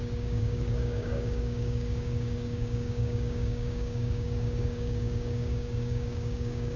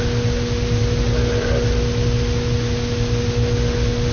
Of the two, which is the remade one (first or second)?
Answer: first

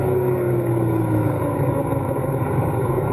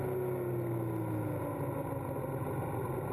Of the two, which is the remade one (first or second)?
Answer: first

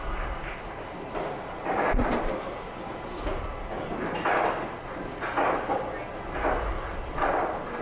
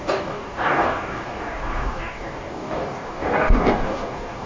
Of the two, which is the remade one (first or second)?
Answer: second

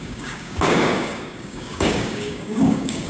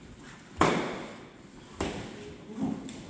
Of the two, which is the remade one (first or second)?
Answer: first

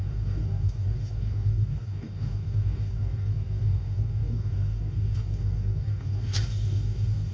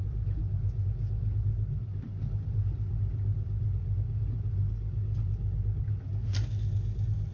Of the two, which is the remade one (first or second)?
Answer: first